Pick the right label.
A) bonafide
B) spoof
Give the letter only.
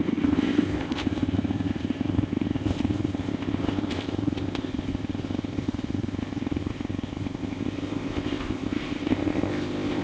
B